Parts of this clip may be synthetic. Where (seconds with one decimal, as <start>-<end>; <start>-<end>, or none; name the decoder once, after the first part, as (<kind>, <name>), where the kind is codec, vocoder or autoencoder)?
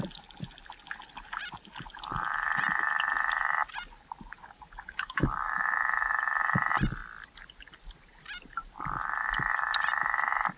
4.4-5.5 (codec, DAC)